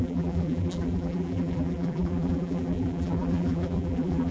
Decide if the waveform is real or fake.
fake